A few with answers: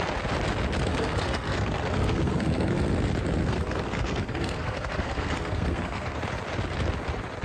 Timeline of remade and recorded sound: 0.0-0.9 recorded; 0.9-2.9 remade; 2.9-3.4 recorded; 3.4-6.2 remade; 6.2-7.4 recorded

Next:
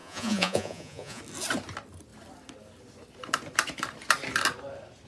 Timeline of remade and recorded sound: 0.0-1.2 remade; 1.2-5.1 recorded

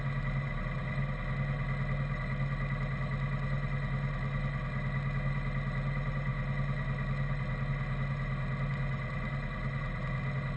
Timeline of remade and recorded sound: 0.0-10.6 recorded